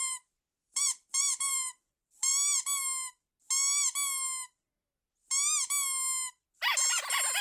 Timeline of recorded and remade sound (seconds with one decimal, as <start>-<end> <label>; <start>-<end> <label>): 0.0-2.3 remade; 2.3-6.5 recorded; 6.5-7.4 remade